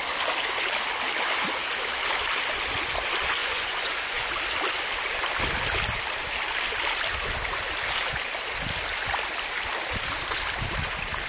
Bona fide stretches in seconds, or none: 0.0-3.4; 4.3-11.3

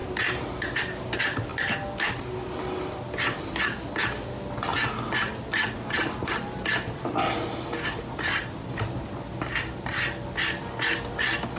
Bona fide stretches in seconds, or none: 0.0-11.6

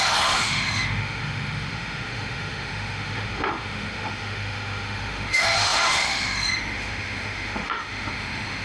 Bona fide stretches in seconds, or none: none

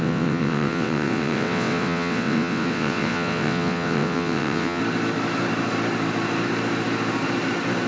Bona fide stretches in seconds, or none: 4.8-7.9

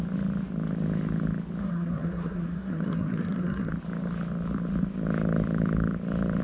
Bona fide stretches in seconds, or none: 0.0-1.6; 3.7-6.4

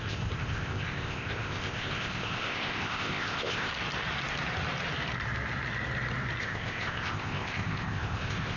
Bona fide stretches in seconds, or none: 3.7-6.4

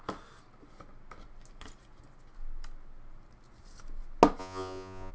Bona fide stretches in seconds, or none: 0.0-4.4

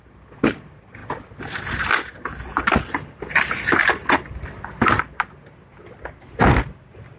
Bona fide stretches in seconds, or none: 0.0-7.2